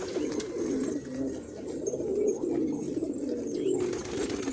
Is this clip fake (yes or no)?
no